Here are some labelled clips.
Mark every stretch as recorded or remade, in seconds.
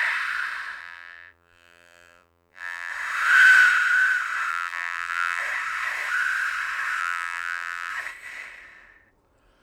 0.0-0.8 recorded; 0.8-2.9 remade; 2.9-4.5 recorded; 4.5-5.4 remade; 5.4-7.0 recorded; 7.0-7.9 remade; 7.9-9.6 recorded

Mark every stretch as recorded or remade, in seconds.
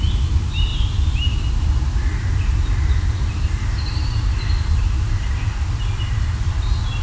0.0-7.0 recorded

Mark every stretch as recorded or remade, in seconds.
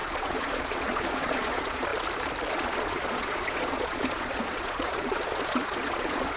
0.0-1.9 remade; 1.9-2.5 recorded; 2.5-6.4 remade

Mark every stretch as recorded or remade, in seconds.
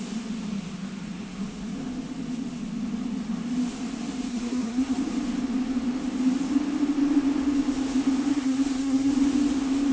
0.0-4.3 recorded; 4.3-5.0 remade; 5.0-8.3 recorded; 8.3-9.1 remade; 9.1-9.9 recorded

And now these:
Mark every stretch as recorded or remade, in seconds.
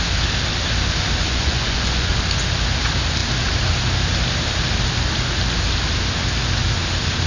0.0-1.2 recorded; 1.2-2.1 remade; 2.1-7.3 recorded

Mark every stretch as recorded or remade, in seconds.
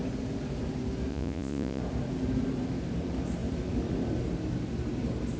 0.0-1.1 recorded; 1.1-1.8 remade; 1.8-5.4 recorded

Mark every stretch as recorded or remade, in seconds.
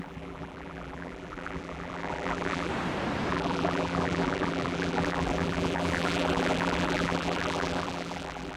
0.0-2.7 remade; 2.7-3.3 recorded; 3.3-8.6 remade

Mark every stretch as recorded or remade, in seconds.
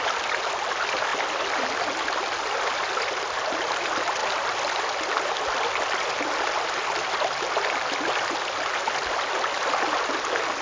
0.0-10.6 recorded